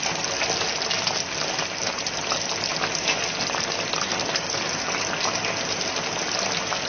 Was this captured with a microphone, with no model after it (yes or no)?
yes